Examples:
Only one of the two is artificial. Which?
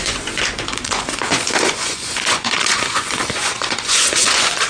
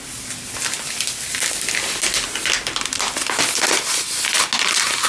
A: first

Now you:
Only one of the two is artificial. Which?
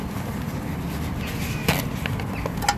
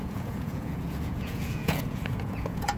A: second